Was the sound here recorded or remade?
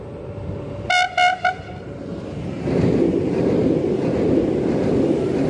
recorded